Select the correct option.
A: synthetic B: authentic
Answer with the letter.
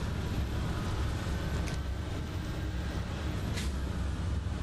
B